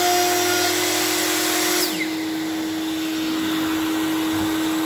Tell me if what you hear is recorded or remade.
recorded